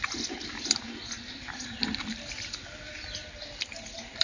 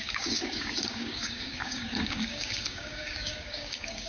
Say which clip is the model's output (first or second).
second